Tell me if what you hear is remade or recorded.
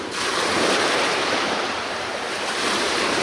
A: remade